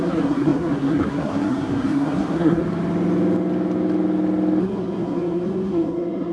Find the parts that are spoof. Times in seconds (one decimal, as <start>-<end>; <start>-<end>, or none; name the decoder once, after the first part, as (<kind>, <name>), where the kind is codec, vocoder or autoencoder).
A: 0.0-2.6 (codec, SNAC); 4.6-6.3